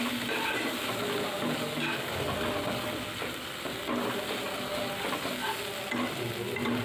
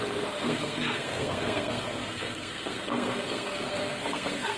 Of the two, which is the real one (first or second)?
first